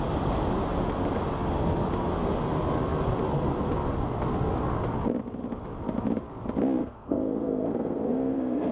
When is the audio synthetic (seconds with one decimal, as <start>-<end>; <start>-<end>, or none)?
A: 6.8-8.7